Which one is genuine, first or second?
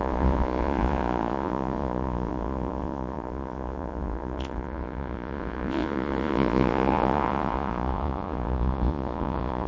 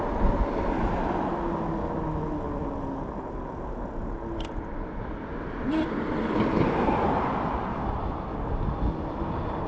second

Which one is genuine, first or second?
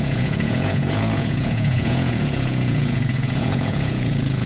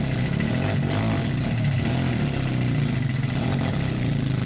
second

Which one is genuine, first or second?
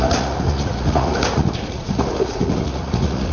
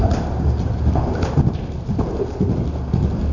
second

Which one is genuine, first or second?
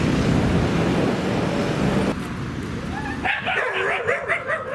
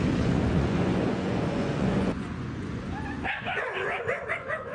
first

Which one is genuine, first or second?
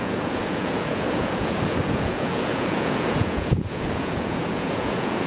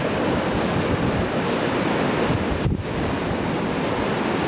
second